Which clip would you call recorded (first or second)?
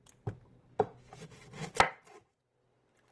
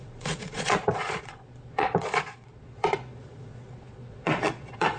first